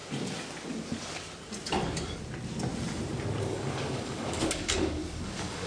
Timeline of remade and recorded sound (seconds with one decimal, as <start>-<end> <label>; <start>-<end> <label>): 0.0-3.4 recorded; 3.4-5.7 remade